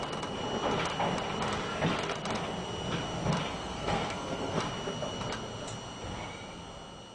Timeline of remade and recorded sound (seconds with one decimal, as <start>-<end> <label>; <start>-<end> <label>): 0.0-3.5 recorded; 3.5-4.6 remade; 4.6-7.1 recorded